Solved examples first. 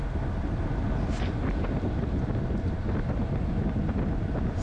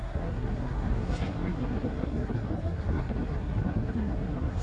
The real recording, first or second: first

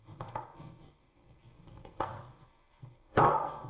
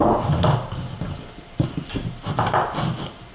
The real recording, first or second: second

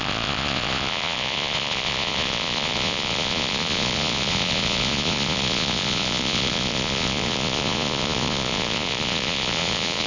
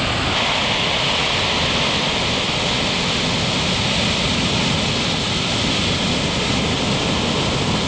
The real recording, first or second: second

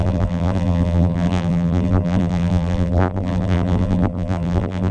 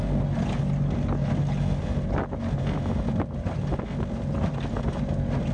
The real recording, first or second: second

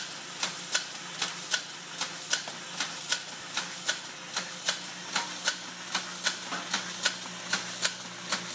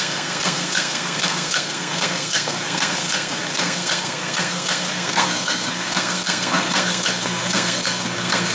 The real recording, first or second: first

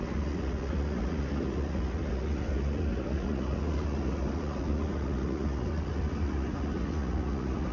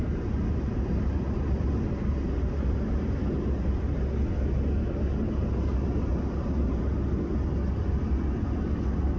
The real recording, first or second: second